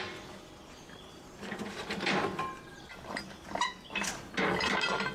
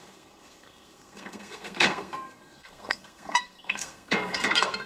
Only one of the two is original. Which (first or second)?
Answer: first